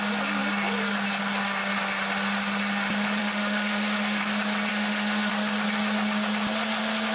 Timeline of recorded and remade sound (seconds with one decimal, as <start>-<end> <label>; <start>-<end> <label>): 0.0-3.2 recorded; 3.2-4.2 remade; 4.2-4.7 recorded; 4.7-5.3 remade; 5.3-7.1 recorded